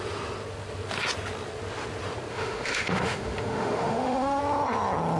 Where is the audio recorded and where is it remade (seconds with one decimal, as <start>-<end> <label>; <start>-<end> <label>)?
0.0-2.3 recorded; 2.3-4.4 remade; 4.4-5.2 recorded